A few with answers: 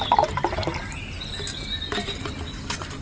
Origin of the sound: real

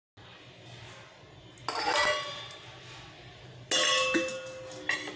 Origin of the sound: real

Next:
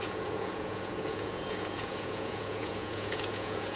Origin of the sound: fake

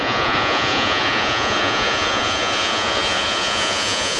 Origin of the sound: fake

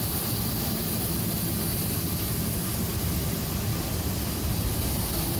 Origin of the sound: real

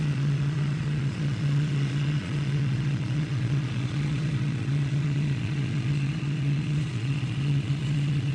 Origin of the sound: fake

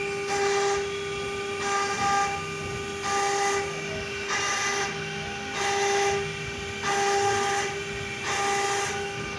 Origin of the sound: real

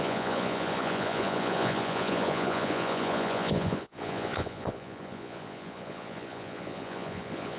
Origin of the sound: fake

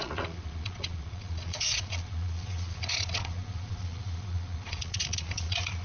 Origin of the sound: fake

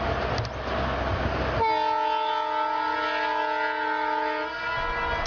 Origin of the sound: real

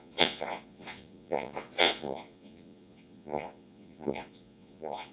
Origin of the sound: fake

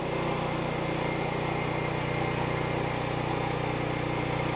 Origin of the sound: real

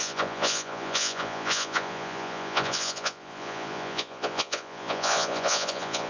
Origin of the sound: fake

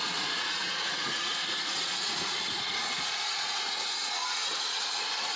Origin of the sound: fake